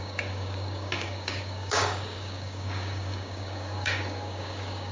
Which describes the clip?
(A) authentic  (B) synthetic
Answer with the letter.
B